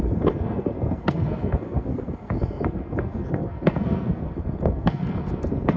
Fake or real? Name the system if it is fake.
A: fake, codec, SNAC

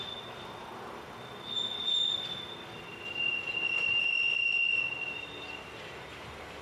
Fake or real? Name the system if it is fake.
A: real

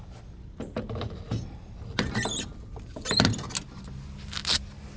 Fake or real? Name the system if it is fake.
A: real